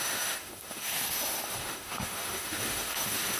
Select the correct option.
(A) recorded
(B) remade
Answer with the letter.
B